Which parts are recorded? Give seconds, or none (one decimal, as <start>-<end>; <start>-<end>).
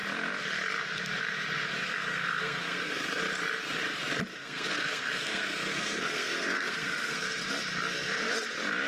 0.0-1.8; 3.2-4.3; 7.4-8.9